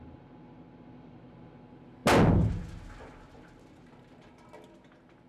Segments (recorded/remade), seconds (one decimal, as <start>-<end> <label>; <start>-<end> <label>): 0.0-5.3 recorded